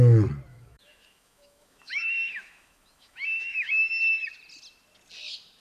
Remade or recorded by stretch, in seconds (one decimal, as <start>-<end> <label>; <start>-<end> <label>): 0.0-0.5 recorded; 0.5-3.7 remade; 3.7-5.6 recorded